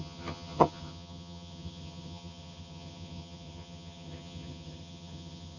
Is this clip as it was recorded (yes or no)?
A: no